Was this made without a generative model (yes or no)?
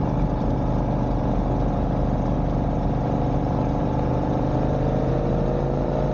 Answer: yes